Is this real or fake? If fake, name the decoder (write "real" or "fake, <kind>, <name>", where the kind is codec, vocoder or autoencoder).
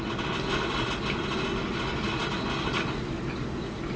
real